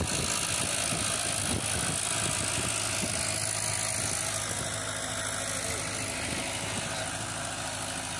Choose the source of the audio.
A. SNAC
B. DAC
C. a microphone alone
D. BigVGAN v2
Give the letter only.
C